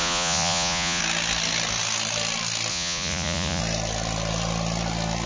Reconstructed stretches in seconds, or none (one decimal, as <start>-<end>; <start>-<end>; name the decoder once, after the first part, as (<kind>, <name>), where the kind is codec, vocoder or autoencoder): 0.0-1.0 (vocoder, Vocos); 2.7-3.6